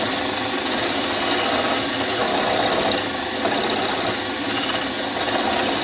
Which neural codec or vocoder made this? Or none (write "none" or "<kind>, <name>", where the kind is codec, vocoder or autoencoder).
none